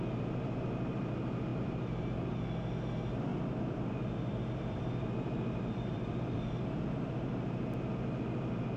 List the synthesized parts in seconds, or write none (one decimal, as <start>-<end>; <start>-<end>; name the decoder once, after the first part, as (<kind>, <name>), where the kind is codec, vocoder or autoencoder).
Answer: 1.5-2.0 (vocoder, BigVGAN v2); 3.3-6.2